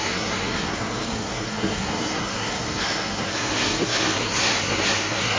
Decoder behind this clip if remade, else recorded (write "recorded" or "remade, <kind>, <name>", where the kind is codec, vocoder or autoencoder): remade, codec, SNAC